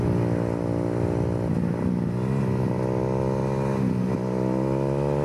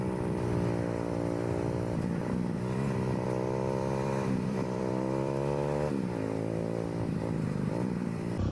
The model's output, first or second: second